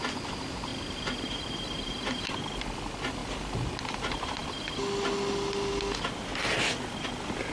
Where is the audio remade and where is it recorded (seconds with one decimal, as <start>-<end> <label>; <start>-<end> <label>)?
0.0-7.5 recorded